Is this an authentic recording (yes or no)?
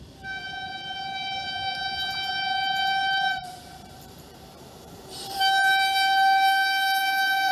no